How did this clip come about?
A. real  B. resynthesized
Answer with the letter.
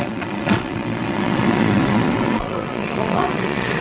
B